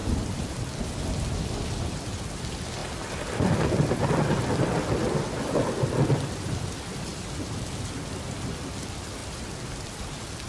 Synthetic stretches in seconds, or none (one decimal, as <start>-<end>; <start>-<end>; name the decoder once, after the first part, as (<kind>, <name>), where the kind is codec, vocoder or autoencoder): 0.0-0.8 (vocoder, BigVGAN v2); 9.2-9.9